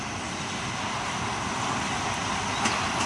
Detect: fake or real real